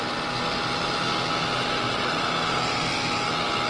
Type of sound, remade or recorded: recorded